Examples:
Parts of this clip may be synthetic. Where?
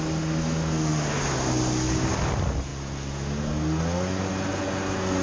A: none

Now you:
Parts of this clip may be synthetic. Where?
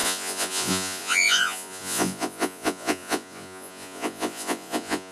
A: 0.0-5.1 (vocoder, Vocos)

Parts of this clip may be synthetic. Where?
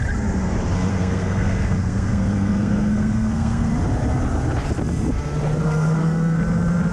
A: 0.9-3.7 (codec, SNAC); 5.6-6.4